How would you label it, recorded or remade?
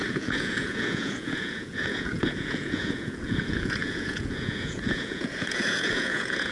remade